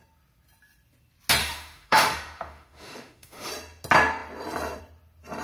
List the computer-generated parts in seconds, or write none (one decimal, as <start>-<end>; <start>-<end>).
1.4-3.5

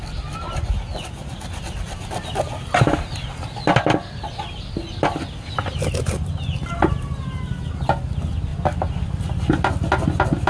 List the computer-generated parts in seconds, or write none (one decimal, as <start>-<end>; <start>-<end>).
none

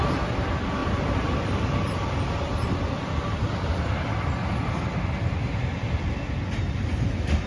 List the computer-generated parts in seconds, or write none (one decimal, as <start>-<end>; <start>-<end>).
0.8-3.9

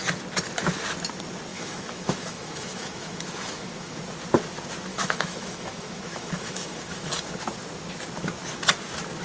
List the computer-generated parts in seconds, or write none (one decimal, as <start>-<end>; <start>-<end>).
1.5-4.0; 4.9-7.3

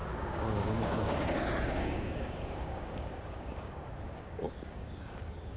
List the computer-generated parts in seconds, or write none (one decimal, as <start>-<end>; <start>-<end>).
0.0-5.6